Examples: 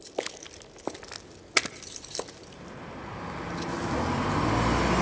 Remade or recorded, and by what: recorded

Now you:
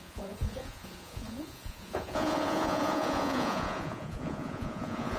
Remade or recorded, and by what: remade, vocoder, Vocos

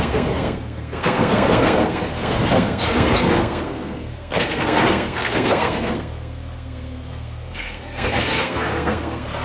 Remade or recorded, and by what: remade, codec, SNAC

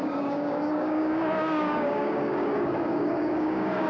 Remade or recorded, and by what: remade, codec, DAC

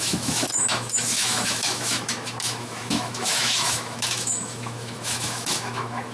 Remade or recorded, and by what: remade, autoencoder, DAC-VAE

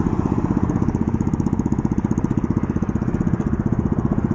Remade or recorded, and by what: recorded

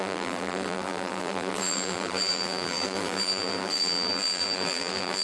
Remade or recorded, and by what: remade, vocoder, BigVGAN v2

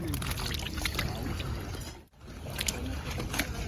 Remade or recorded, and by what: recorded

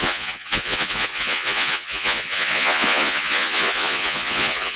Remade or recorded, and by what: remade, vocoder, Vocos